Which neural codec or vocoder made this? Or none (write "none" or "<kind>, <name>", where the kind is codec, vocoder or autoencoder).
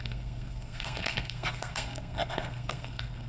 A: codec, SNAC